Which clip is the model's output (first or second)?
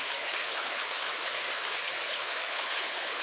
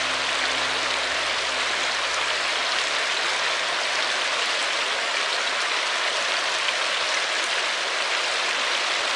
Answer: first